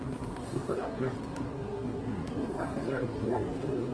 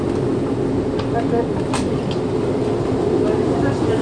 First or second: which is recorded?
second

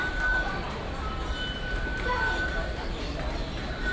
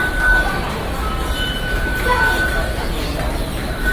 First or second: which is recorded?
second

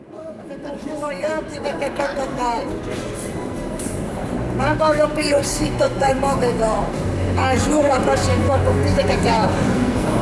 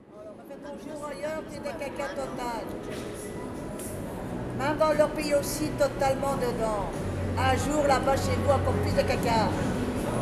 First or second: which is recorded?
second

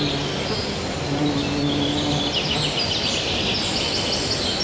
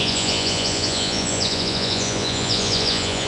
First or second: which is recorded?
first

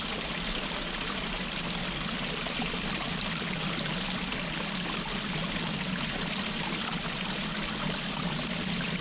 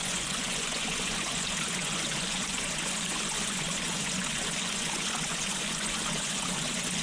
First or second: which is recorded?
first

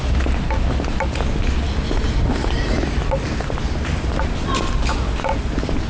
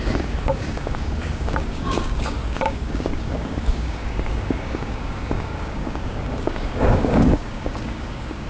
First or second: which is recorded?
first